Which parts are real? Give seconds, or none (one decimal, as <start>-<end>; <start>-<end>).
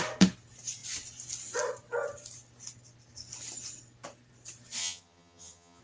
0.0-4.8